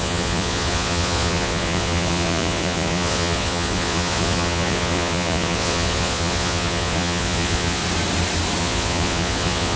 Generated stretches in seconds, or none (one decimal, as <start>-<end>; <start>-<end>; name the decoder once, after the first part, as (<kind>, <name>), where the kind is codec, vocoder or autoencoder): 0.0-7.8 (vocoder, Vocos); 8.6-9.8